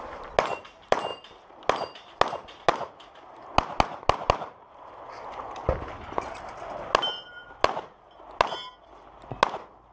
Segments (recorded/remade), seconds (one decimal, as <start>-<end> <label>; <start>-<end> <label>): 0.0-9.9 recorded